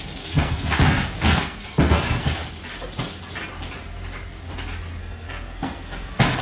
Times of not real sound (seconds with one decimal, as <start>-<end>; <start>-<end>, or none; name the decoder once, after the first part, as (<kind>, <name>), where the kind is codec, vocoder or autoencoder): 0.0-2.4 (codec, SNAC); 5.0-6.4